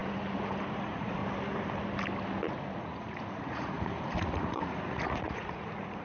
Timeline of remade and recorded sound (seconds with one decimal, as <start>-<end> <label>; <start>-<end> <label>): 0.0-0.7 recorded; 0.7-1.2 remade; 1.2-2.8 recorded; 2.8-6.0 remade